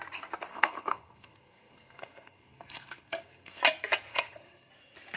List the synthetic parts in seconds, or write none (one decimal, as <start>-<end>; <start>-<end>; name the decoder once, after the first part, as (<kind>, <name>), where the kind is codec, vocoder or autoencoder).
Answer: 0.5-3.6 (codec, SNAC); 4.1-4.7